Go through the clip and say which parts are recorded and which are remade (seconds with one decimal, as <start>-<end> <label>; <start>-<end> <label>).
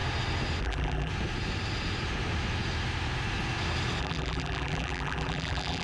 0.0-0.6 recorded; 0.6-1.1 remade; 1.1-4.0 recorded; 4.0-5.8 remade